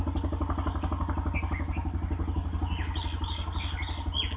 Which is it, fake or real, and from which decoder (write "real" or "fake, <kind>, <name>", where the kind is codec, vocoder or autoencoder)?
real